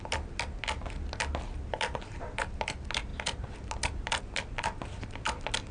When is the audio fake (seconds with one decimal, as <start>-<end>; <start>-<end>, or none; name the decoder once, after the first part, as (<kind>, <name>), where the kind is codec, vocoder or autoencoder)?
none